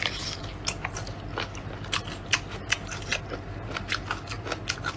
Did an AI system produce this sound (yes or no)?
no